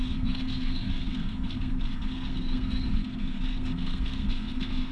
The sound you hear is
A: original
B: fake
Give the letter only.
B